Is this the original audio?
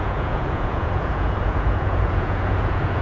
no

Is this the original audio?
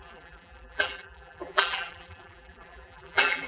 no